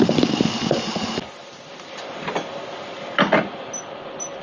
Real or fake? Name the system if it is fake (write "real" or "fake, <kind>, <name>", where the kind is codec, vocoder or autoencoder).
real